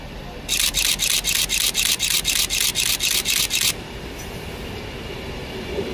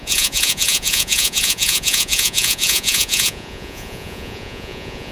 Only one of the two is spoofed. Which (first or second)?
second